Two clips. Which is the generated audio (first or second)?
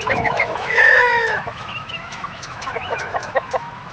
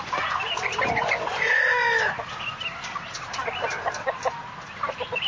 first